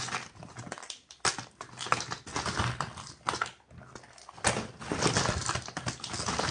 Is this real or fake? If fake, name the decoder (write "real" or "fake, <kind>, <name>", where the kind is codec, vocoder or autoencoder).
real